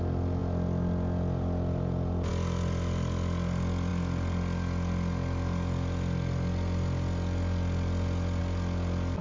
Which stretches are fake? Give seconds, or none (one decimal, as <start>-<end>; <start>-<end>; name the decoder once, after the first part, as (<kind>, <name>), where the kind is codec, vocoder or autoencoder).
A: none